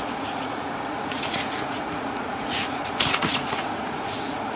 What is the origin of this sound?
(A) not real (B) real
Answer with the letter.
A